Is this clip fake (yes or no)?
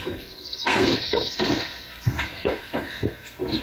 yes